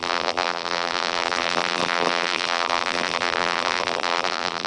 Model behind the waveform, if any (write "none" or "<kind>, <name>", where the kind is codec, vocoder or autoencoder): vocoder, BigVGAN v2